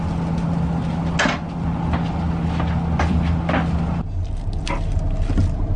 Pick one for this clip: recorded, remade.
recorded